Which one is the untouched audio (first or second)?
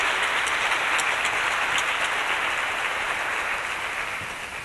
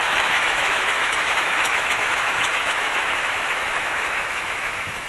first